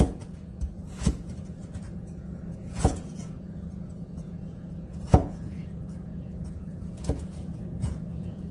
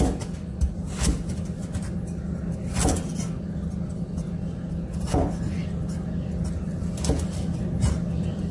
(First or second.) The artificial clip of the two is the first